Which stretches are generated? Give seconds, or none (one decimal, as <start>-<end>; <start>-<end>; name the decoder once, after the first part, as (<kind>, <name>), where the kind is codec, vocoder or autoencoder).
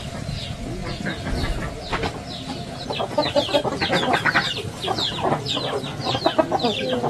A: none